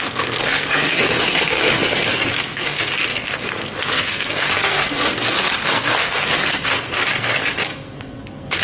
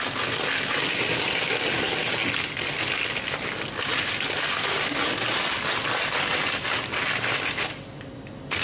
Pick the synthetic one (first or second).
first